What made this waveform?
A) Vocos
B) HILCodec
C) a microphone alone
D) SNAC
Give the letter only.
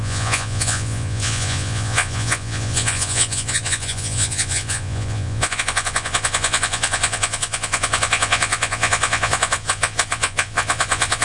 A